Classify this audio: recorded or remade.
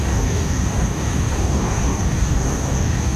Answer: remade